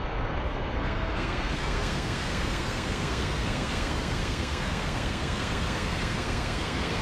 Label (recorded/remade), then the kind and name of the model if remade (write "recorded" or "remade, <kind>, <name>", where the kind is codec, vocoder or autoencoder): remade, codec, SNAC